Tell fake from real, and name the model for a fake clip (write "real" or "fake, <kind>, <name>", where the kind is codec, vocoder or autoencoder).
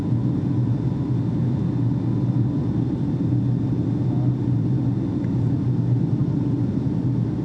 real